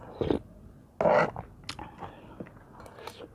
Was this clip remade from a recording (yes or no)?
no